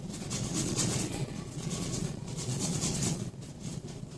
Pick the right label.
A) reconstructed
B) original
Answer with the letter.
A